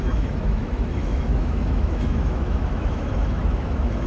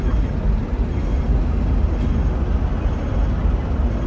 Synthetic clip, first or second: first